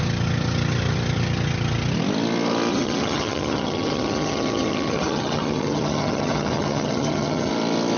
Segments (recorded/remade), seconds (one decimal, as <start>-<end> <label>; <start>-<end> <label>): 0.0-2.7 recorded; 2.7-7.5 remade; 7.5-8.0 recorded